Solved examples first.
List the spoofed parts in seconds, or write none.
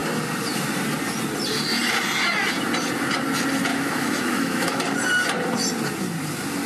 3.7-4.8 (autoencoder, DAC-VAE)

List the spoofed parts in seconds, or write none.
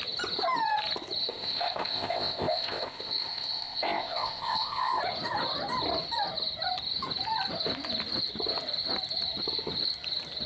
1.2-5.0 (codec, ZipCodec)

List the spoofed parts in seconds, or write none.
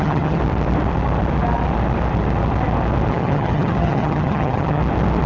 0.0-0.4 (vocoder, HiFi-GAN); 3.1-4.8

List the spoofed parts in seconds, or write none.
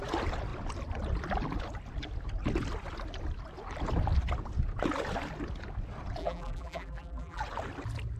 6.2-7.4 (vocoder, BigVGAN v2)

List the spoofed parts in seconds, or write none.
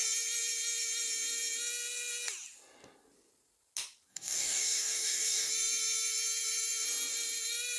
4.1-5.5 (codec, DAC)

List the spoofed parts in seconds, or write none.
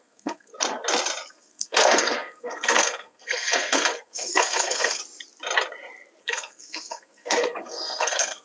0.0-0.5 (codec, SNAC); 1.3-5.0; 6.2-8.4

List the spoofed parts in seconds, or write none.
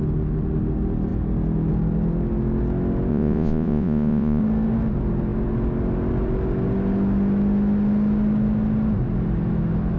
3.1-4.4 (vocoder, Vocos)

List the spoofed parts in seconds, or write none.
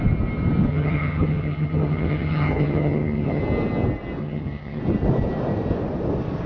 0.7-3.4 (vocoder, HiFi-GAN); 4.2-4.8